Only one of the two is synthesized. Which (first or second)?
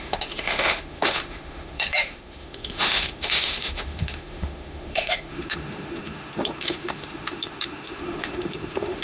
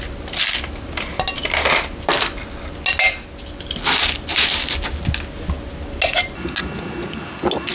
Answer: first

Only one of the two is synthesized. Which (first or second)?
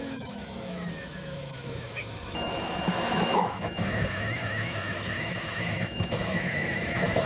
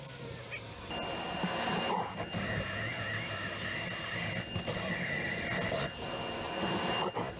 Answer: first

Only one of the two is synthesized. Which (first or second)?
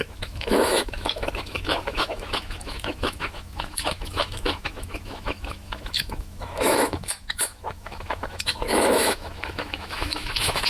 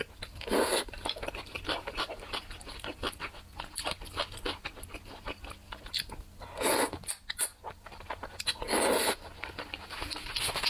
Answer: first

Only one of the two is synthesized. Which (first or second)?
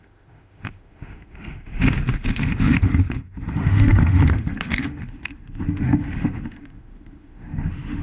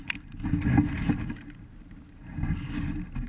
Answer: first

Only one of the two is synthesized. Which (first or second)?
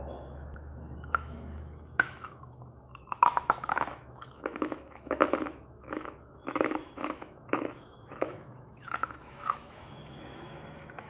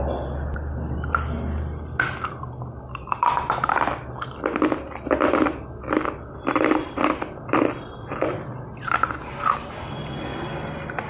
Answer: first